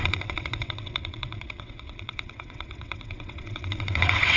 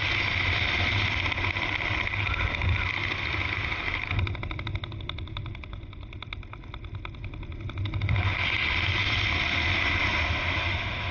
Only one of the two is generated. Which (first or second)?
first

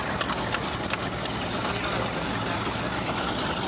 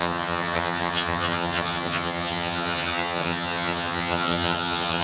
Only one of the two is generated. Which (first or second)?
second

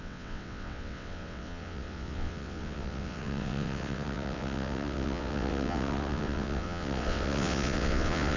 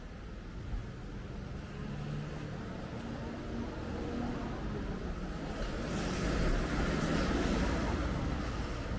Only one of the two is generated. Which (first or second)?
first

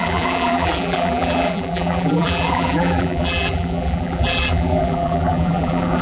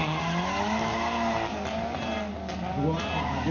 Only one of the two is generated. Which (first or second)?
first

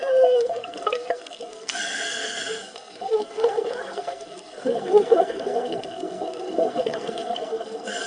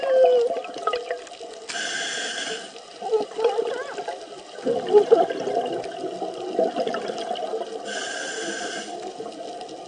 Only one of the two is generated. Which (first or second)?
first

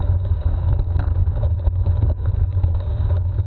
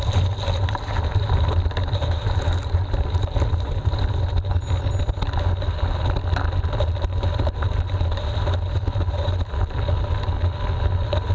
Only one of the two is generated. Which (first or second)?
first